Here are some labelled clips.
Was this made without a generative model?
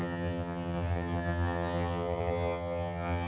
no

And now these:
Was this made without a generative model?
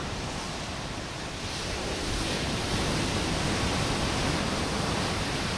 yes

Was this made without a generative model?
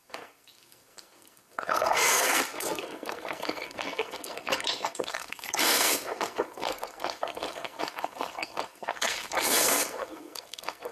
no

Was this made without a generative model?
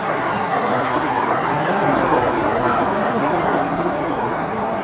no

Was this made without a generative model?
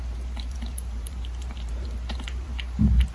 no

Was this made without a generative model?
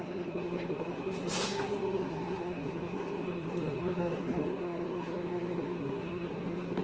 no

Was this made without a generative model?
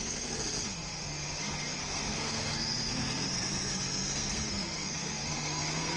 no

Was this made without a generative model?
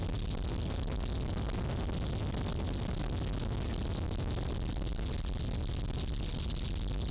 yes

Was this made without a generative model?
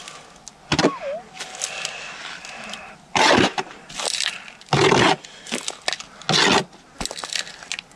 yes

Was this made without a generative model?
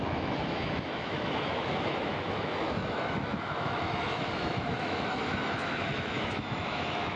no